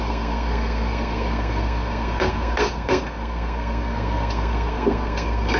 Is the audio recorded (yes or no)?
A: no